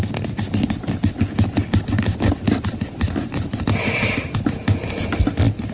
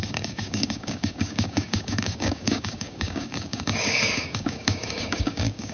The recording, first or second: first